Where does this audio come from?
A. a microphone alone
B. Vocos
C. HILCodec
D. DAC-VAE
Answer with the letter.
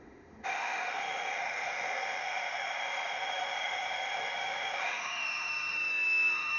D